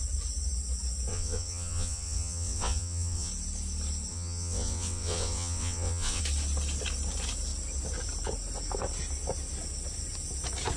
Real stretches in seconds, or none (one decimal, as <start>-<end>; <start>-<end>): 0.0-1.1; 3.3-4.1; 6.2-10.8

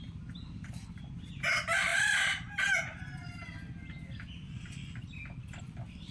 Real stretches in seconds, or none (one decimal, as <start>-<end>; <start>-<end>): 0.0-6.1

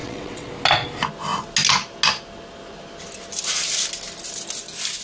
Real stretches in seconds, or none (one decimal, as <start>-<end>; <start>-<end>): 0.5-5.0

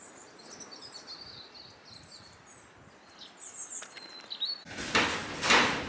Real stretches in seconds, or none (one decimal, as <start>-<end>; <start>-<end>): 0.0-5.9

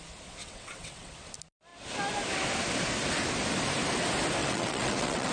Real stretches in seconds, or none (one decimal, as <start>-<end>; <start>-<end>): 0.0-0.4; 1.1-4.4

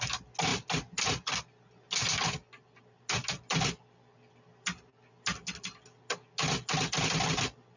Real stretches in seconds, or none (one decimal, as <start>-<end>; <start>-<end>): 0.0-7.8

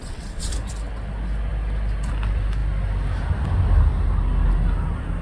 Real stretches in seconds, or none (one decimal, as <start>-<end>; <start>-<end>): 0.5-5.2

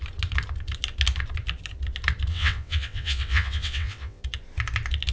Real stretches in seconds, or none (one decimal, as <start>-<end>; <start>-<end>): 0.0-2.3; 4.2-5.1